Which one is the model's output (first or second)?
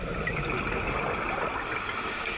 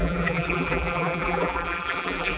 second